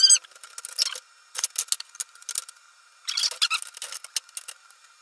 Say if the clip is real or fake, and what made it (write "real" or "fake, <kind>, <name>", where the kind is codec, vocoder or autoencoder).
real